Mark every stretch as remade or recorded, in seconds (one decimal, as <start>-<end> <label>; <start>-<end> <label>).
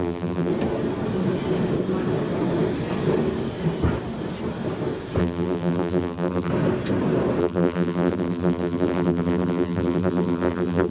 0.0-0.5 remade; 0.5-5.2 recorded; 5.2-6.5 remade; 6.5-7.4 recorded; 7.4-10.9 remade